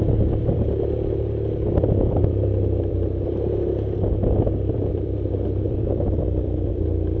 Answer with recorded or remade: remade